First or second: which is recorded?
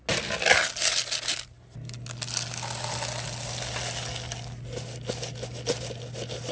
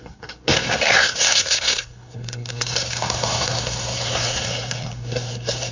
first